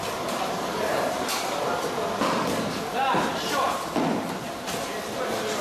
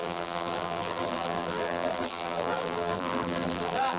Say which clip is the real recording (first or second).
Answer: first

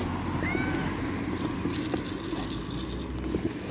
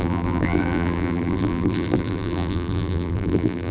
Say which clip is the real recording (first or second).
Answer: first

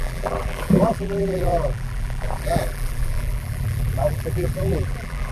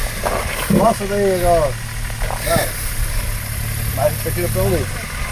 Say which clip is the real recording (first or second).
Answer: second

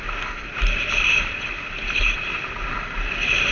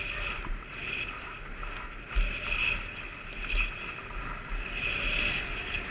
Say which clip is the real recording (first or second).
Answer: second